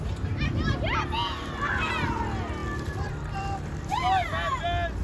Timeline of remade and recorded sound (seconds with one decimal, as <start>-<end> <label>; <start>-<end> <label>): 0.0-2.6 recorded; 2.6-3.9 remade; 3.9-5.0 recorded